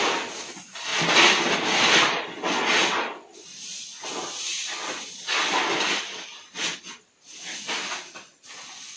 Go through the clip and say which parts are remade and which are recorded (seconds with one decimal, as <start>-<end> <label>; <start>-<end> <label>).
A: 0.0-0.9 recorded; 0.9-6.0 remade; 6.0-9.0 recorded